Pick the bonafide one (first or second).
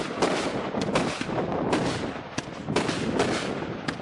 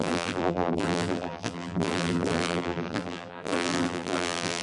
first